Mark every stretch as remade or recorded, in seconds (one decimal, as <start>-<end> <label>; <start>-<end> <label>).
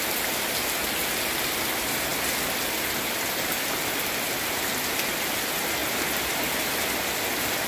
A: 0.0-7.7 recorded